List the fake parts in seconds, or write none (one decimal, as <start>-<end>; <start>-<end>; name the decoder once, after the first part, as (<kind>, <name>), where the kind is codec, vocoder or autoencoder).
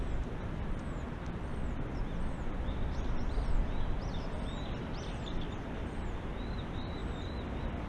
none